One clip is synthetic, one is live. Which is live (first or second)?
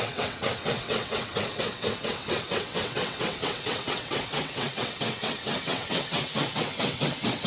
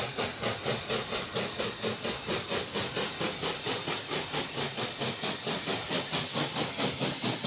second